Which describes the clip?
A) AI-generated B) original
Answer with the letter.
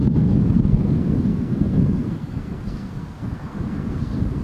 A